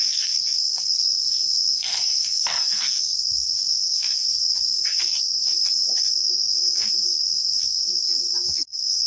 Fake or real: fake